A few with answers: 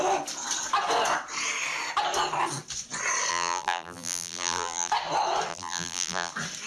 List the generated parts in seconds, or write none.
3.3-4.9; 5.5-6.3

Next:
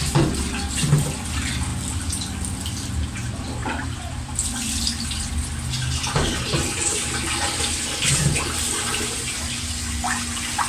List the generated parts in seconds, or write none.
1.7-2.3; 3.6-4.8

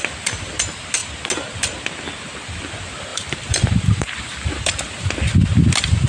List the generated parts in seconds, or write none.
3.1-4.7

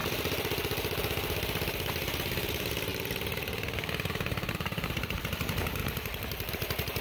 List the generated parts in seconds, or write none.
1.9-7.0

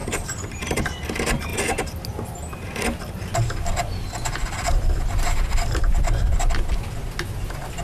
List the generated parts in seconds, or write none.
0.0-0.8

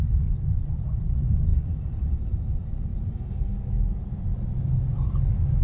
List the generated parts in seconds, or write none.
0.0-2.9; 4.1-5.6

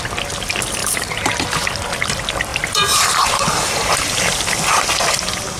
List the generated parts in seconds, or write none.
0.8-1.7; 2.5-4.1

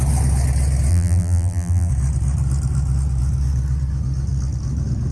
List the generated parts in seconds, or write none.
0.9-1.9